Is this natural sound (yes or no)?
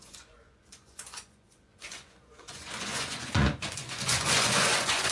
no